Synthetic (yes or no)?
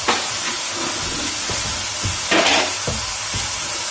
no